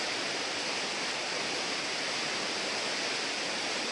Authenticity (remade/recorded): recorded